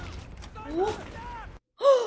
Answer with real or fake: real